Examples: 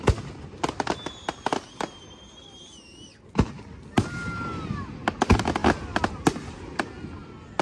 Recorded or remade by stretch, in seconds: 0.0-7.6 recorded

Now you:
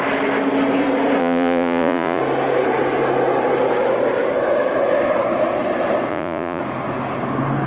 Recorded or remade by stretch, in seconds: 0.0-1.2 recorded; 1.2-2.2 remade; 2.2-6.1 recorded; 6.1-6.6 remade; 6.6-7.7 recorded

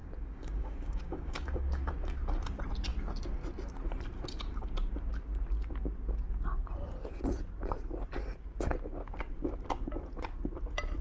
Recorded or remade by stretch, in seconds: 0.0-1.9 remade; 1.9-11.0 recorded

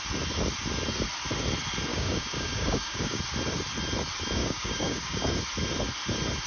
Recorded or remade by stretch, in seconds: 0.0-1.9 recorded; 1.9-3.2 remade; 3.2-4.4 recorded; 4.4-5.2 remade; 5.2-6.5 recorded

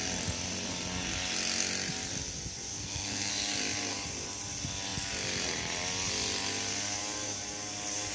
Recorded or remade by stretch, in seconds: 0.0-2.7 recorded; 2.7-3.3 remade; 3.3-8.1 recorded

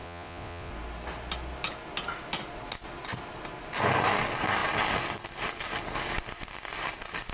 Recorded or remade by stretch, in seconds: 0.0-0.7 remade; 0.7-7.3 recorded

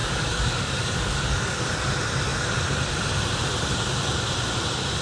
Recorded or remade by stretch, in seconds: 0.0-1.9 remade; 1.9-5.0 recorded